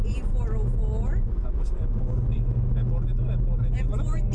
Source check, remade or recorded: recorded